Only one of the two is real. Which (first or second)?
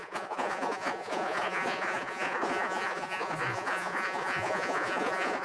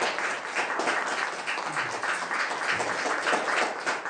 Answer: second